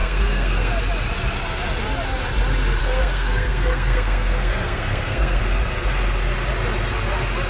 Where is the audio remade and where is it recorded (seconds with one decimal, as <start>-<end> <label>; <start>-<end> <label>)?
0.0-0.8 remade; 0.8-2.8 recorded; 2.8-5.4 remade; 5.4-7.5 recorded